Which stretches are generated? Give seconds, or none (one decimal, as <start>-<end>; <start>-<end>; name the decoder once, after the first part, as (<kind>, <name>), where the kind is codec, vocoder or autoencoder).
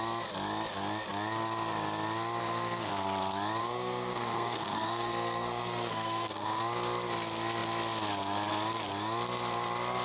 2.4-2.9 (codec, SNAC); 3.6-6.6